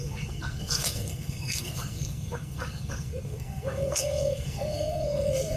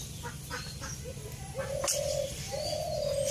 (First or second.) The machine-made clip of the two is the first